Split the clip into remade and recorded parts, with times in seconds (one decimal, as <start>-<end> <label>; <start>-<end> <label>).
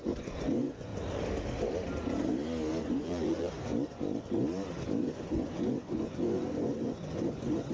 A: 0.0-0.9 remade; 0.9-2.8 recorded; 2.8-3.7 remade; 3.7-5.0 recorded; 5.0-7.7 remade